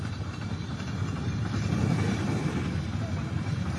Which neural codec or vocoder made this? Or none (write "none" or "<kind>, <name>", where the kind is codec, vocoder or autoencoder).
vocoder, BigVGAN v2